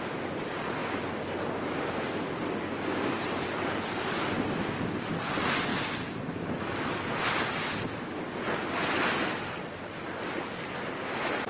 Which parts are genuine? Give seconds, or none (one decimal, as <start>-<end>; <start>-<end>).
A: 0.0-11.5